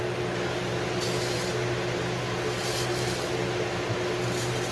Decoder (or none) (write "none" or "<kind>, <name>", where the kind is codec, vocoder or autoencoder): none